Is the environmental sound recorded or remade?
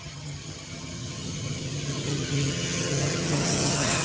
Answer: remade